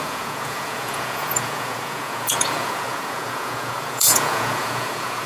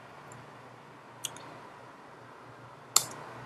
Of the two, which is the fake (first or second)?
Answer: first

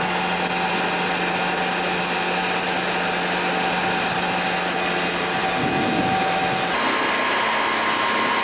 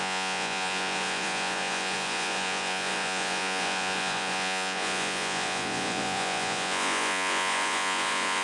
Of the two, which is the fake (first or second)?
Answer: second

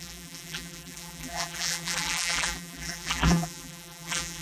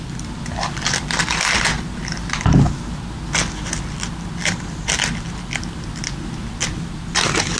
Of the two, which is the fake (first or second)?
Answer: first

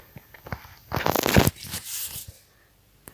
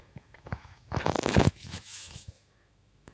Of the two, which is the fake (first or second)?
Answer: second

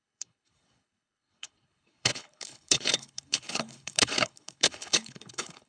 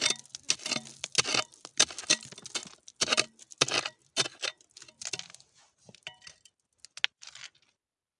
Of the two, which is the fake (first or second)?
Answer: first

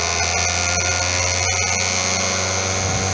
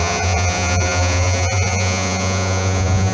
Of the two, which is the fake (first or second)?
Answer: second